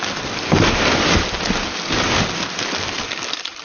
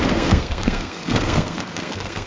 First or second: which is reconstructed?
second